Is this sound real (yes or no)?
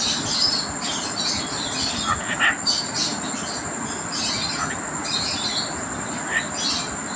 yes